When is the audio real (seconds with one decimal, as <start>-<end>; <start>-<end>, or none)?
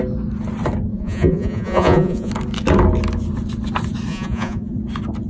0.0-0.9; 2.3-4.1; 4.8-5.3